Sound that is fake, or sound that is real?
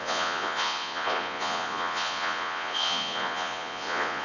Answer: fake